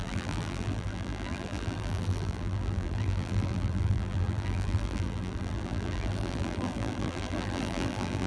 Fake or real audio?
fake